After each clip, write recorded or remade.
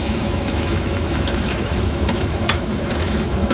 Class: remade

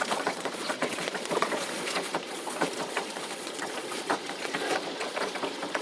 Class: remade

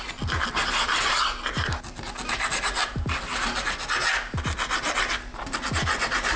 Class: recorded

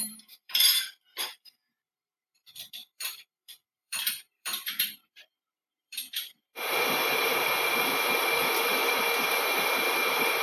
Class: remade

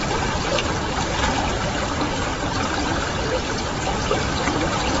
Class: recorded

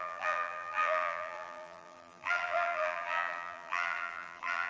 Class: remade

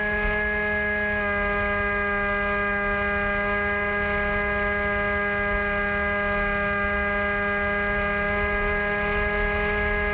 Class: recorded